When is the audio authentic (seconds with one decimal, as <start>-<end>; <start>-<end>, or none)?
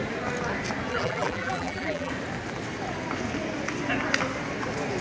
0.0-0.9; 2.1-5.0